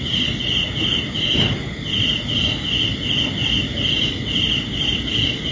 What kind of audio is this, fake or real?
real